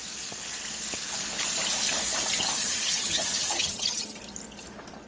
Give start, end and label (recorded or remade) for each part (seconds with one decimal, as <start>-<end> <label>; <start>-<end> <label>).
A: 0.0-2.6 recorded; 2.6-4.2 remade; 4.2-5.1 recorded